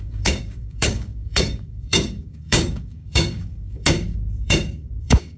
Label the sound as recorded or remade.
remade